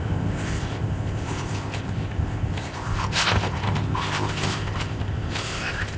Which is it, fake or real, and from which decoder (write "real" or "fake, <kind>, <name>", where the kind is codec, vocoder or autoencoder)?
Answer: fake, codec, ZipCodec